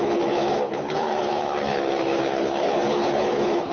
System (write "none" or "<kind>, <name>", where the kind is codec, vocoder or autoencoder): codec, HILCodec